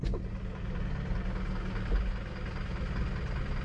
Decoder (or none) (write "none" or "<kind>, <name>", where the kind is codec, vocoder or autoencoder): none